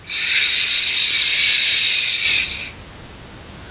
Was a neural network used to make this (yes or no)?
no